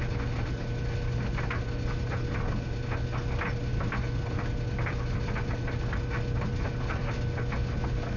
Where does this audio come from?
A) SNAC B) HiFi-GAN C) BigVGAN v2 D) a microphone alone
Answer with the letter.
D